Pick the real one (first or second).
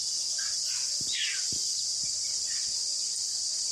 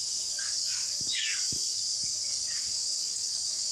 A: first